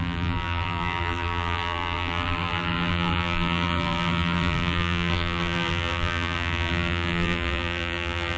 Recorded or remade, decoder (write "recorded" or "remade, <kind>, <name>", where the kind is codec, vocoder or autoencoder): remade, vocoder, BigVGAN v2